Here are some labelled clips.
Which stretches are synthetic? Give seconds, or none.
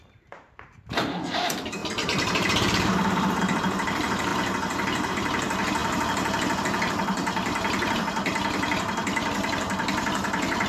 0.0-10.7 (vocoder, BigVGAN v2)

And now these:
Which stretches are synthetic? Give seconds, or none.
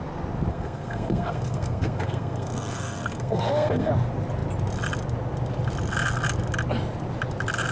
0.5-3.9 (codec, SNAC)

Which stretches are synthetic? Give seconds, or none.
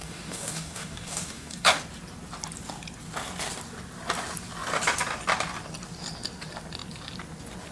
0.0-1.8 (codec, DAC)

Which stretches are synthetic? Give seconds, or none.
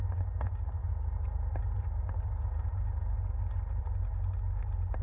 none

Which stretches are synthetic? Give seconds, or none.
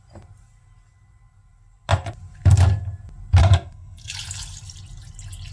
3.4-4.1 (codec, SNAC)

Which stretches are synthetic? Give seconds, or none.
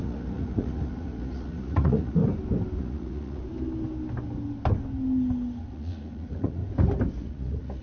0.0-2.2 (vocoder, Vocos); 2.8-3.4; 5.7-6.6; 7.2-7.8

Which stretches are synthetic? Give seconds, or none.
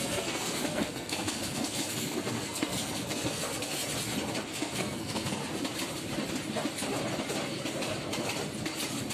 0.0-3.8 (codec, SNAC); 4.4-5.4